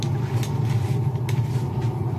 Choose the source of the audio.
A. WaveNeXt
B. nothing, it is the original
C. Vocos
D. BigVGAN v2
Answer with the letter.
B